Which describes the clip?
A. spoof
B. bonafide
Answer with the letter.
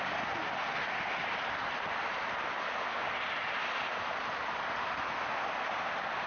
B